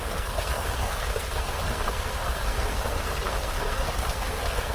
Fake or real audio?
fake